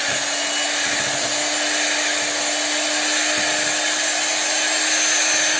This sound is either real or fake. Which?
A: real